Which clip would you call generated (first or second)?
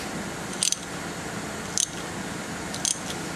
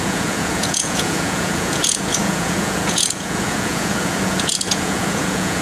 second